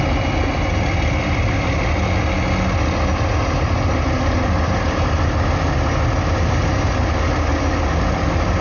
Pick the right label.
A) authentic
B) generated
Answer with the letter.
A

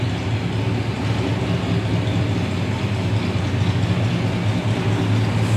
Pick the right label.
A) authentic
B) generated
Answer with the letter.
A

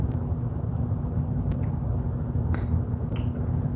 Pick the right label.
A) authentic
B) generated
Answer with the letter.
A